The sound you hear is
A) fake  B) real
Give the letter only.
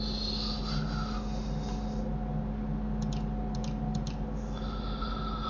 B